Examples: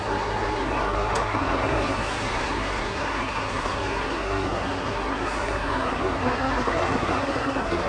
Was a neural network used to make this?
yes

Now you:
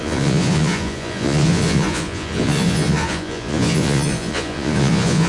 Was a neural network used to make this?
yes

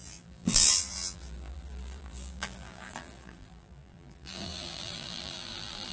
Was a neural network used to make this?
yes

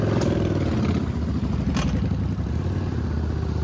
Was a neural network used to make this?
no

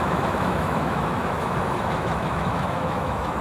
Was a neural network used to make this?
yes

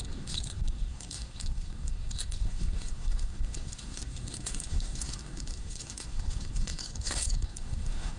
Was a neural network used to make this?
yes